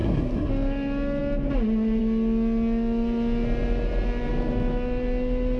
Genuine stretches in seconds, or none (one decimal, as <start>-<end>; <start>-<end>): 0.5-5.6